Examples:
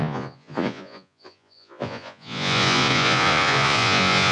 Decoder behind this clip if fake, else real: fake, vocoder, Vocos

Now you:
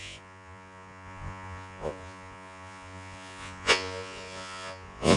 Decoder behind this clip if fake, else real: fake, vocoder, Vocos